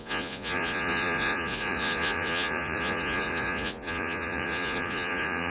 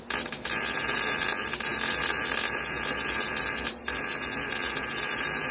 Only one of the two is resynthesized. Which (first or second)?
first